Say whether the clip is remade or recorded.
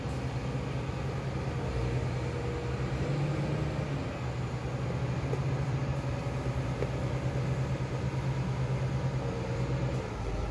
recorded